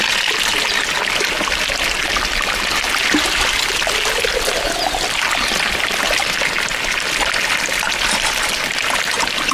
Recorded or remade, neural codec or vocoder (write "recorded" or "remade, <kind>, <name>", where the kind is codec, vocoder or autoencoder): recorded